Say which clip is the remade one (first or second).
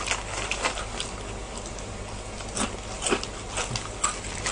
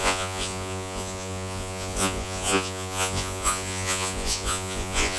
second